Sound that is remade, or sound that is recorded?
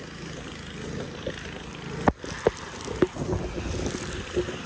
recorded